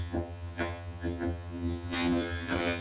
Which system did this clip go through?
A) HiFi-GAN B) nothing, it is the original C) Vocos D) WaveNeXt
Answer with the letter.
A